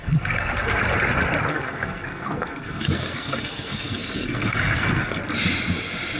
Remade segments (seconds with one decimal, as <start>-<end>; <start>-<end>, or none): 0.0-0.8; 1.5-5.2